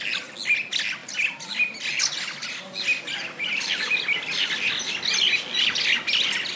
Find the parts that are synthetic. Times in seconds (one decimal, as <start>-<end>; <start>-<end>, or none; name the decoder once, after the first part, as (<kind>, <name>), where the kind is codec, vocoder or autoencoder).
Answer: none